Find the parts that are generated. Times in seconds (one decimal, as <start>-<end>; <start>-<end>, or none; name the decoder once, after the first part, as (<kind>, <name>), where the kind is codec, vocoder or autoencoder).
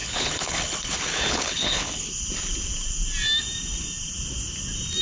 0.0-2.1 (codec, HILCodec)